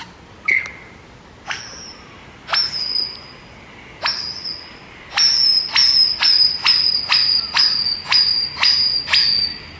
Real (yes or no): yes